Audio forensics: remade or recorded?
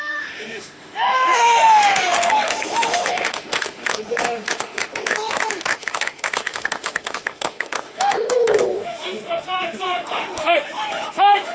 remade